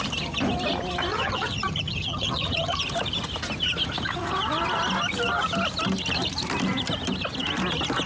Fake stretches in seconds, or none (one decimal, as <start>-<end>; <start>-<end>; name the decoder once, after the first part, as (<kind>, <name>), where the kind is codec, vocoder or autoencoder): 1.1-2.8 (vocoder, HiFi-GAN)